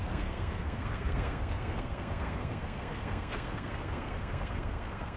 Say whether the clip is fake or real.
fake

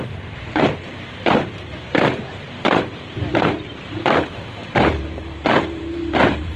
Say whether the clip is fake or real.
fake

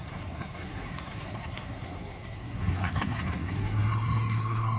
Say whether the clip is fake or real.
fake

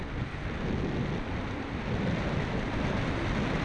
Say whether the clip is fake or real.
real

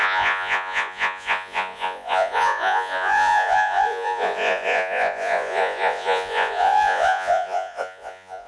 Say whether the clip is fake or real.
fake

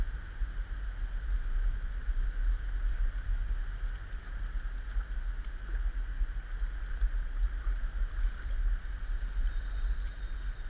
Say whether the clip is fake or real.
real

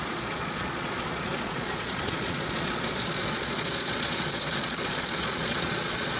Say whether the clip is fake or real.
fake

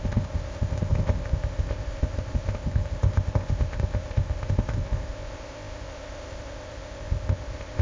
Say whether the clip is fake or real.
fake